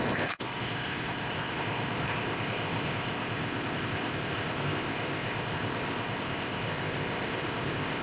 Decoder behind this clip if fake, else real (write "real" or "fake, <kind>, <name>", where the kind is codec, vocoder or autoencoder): fake, codec, ZipCodec